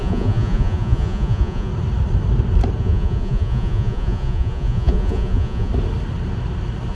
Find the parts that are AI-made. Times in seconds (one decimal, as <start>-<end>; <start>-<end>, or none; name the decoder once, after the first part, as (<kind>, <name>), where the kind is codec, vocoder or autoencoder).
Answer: 0.0-1.7 (vocoder, Vocos); 2.8-5.7